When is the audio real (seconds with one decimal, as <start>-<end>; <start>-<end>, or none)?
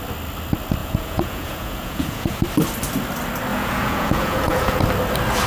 0.0-0.8; 2.4-3.5; 4.8-5.5